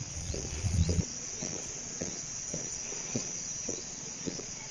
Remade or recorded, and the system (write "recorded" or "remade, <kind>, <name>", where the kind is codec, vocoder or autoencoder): remade, vocoder, Vocos